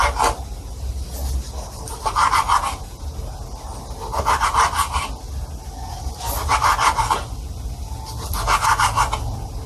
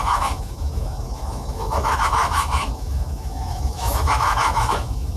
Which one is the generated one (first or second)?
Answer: second